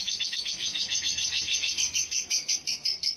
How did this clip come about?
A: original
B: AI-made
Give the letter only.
B